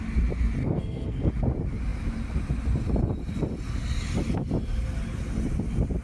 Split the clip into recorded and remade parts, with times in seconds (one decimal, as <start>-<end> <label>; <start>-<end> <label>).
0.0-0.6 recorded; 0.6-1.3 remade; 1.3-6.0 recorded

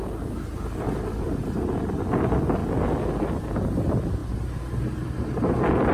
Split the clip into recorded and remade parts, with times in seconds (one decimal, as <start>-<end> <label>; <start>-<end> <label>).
0.0-5.9 recorded

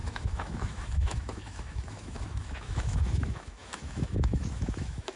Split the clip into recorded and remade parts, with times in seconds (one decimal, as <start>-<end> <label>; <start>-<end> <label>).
0.0-5.2 remade